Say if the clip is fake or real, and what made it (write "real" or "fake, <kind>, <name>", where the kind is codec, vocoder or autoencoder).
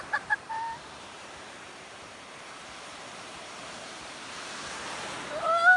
fake, vocoder, BigVGAN v2